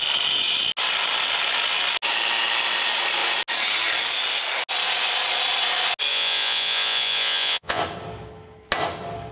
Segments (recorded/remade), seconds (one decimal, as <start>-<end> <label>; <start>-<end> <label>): 0.0-6.1 recorded; 6.1-7.8 remade; 7.8-9.3 recorded